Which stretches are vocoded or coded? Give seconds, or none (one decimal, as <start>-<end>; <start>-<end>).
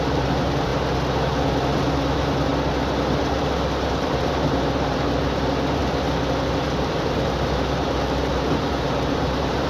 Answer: 0.0-0.7; 2.1-2.5; 3.4-5.8; 6.5-9.7